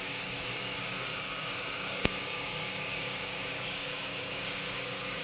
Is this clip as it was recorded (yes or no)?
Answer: no